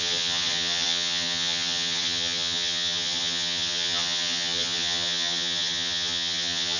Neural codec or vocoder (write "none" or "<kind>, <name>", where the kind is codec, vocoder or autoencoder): vocoder, HiFi-GAN